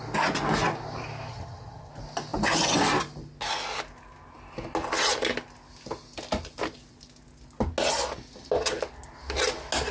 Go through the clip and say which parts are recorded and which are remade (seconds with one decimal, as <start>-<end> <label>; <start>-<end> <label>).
0.0-1.3 recorded; 1.3-1.9 remade; 1.9-9.9 recorded